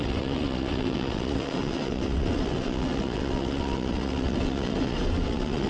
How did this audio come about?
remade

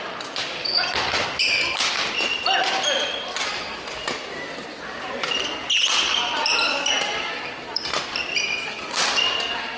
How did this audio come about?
recorded